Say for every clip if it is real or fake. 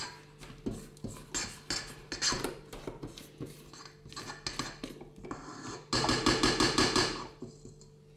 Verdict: real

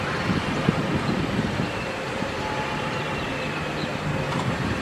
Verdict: fake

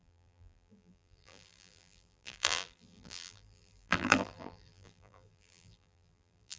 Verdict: fake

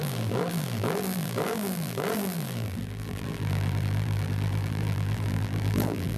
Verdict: fake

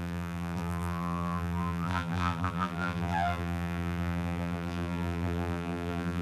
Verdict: fake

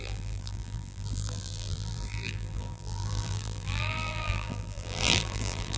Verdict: fake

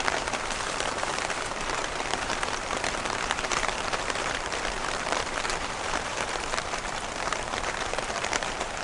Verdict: fake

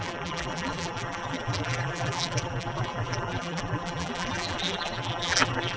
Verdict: fake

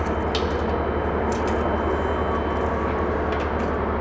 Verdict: real